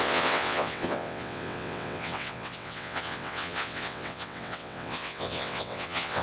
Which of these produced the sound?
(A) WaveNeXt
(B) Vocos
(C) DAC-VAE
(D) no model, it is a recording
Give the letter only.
A